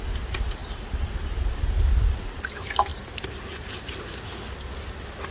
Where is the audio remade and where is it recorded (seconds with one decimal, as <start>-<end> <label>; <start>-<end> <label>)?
0.0-0.6 recorded; 0.6-2.0 remade; 2.0-2.9 recorded; 2.9-3.4 remade; 3.4-5.3 recorded